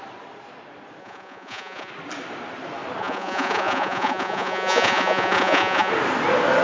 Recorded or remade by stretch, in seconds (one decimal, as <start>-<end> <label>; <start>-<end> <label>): 0.0-1.0 recorded; 1.0-1.9 remade; 1.9-3.0 recorded; 3.0-5.9 remade; 5.9-6.6 recorded